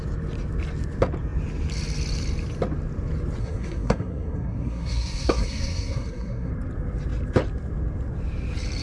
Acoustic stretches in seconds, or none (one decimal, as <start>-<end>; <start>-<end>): 0.0-3.4; 6.5-8.8